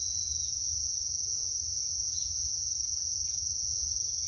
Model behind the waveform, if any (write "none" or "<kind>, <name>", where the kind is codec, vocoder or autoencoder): vocoder, Vocos